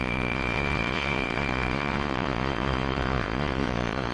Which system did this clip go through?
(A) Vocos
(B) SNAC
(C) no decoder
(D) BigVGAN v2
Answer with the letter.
A